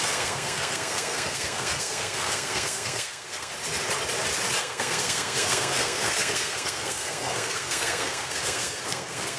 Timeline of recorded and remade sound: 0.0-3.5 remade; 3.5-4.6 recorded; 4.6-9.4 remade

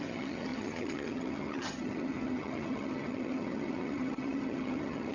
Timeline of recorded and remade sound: 0.0-5.1 remade

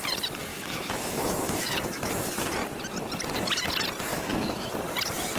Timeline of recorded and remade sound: 0.0-0.5 recorded; 0.5-2.1 remade; 2.1-4.1 recorded; 4.1-4.7 remade; 4.7-5.4 recorded

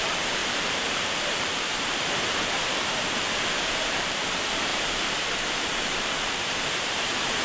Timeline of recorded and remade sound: 0.0-4.7 remade; 4.7-5.6 recorded; 5.6-7.4 remade

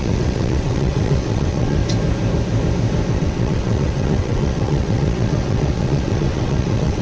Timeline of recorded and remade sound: 0.0-1.8 remade; 1.8-3.1 recorded; 3.1-7.0 remade

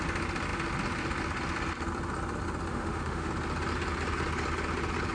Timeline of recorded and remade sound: 0.0-2.7 recorded; 2.7-3.3 remade; 3.3-5.1 recorded

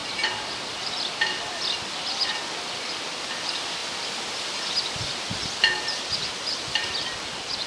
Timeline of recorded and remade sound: 0.0-3.8 remade; 3.8-4.4 recorded; 4.4-7.7 remade

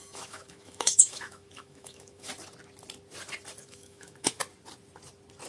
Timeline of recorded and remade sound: 0.0-2.3 remade; 2.3-3.6 recorded; 3.6-4.4 remade; 4.4-5.5 recorded